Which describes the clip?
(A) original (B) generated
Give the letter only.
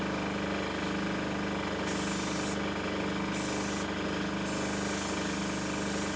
A